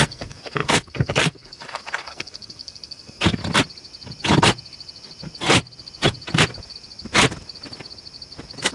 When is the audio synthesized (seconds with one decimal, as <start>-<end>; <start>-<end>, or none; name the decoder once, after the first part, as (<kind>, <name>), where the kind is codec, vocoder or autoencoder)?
0.0-3.4 (codec, SNAC)